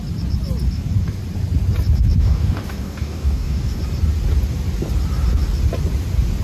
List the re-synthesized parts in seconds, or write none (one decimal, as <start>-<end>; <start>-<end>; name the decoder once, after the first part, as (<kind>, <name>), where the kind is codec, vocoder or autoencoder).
2.2-3.8 (codec, DAC)